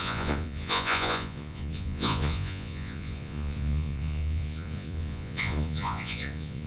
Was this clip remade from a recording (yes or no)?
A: yes